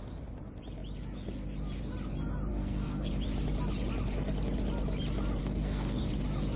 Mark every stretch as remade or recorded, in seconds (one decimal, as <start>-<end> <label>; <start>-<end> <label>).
0.0-2.5 recorded; 2.5-3.1 remade; 3.1-5.4 recorded; 5.4-6.0 remade; 6.0-6.6 recorded